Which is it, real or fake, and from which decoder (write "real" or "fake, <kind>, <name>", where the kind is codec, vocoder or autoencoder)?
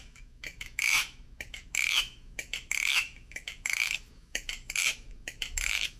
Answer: fake, autoencoder, DAC-VAE